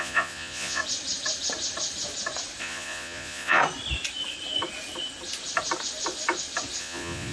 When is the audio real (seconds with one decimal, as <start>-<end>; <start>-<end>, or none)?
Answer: 0.8-2.6; 3.6-6.8